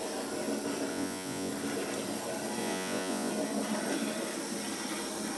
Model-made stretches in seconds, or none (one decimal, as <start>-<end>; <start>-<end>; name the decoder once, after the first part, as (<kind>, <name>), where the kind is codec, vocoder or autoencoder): 0.9-1.5 (vocoder, Vocos); 2.6-3.3